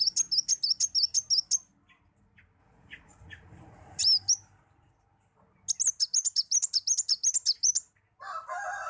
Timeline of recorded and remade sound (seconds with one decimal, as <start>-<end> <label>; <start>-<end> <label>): 0.0-2.6 recorded; 2.6-4.0 remade; 4.0-8.9 recorded